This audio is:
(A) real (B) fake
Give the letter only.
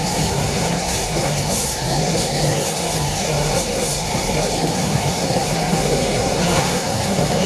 B